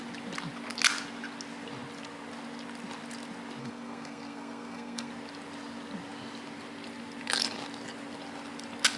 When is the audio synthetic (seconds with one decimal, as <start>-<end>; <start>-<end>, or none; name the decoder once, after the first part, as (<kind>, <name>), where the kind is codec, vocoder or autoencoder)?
3.6-5.1 (codec, SNAC)